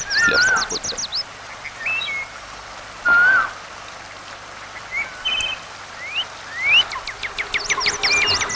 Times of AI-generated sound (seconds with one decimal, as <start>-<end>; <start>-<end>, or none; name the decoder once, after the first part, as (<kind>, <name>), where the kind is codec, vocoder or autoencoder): none